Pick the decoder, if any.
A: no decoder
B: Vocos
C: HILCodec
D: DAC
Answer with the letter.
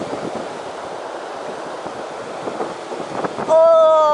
A